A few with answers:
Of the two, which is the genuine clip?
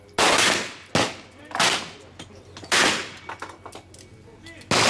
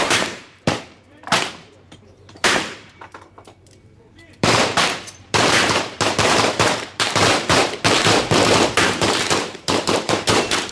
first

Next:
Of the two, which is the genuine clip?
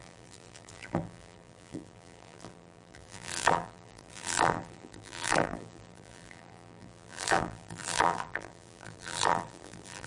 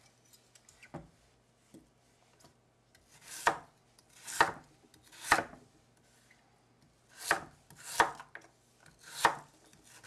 second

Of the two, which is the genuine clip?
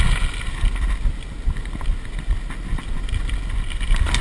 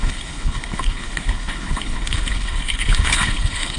first